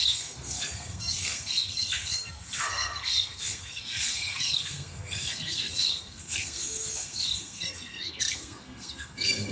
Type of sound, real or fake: fake